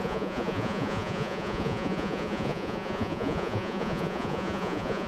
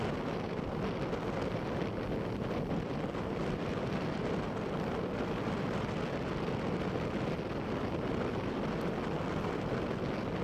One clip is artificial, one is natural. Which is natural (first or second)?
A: second